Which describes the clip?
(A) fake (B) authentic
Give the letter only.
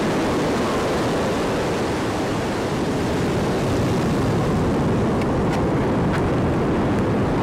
B